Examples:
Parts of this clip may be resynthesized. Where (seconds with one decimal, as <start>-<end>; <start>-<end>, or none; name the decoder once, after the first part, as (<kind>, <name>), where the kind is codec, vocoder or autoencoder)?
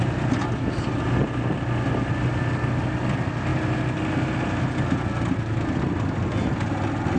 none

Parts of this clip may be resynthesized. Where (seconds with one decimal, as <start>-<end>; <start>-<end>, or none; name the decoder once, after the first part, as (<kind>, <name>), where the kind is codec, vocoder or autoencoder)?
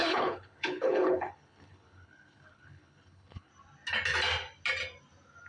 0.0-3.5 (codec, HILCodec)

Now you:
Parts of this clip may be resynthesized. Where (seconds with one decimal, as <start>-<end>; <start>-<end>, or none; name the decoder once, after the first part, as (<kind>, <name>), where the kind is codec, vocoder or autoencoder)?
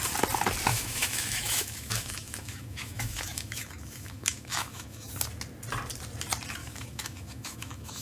0.7-5.1 (autoencoder, DAC-VAE); 6.6-8.0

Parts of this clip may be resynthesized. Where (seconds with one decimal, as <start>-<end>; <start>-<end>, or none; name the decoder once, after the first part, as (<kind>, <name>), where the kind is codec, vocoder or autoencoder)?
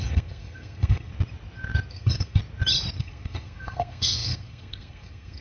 0.0-1.1 (codec, SNAC); 1.9-2.4; 3.0-5.4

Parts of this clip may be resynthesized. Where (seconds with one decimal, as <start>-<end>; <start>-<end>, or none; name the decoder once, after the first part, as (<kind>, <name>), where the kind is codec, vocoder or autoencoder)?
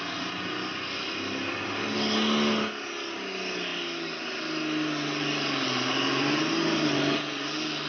none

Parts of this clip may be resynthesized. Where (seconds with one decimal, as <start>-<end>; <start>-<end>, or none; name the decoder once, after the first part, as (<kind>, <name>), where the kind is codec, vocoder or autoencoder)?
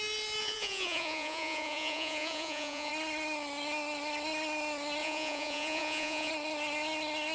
0.4-2.9 (vocoder, Vocos); 5.0-6.3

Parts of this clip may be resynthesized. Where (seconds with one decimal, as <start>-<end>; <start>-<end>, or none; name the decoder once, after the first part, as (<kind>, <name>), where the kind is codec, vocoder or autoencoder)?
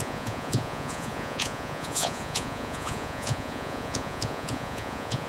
0.0-5.3 (vocoder, Vocos)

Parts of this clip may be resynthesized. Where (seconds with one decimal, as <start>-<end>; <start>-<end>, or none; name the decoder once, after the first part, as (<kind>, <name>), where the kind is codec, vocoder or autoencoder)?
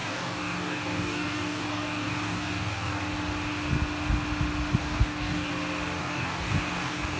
0.0-3.0 (codec, DAC); 4.8-5.5; 6.0-7.2